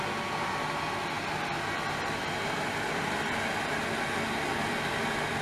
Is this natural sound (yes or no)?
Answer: yes